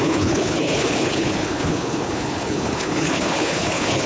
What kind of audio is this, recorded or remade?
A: remade